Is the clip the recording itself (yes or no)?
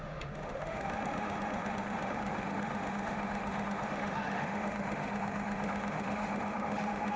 no